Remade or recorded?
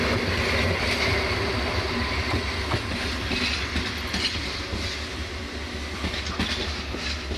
recorded